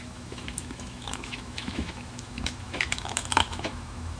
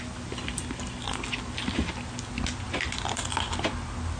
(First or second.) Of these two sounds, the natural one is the second